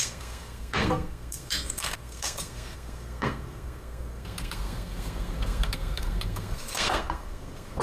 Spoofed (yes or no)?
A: yes